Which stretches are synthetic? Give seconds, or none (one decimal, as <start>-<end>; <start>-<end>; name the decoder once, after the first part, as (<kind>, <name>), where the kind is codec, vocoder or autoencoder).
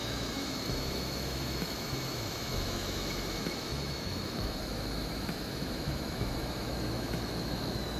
0.0-8.0 (autoencoder, DAC-VAE)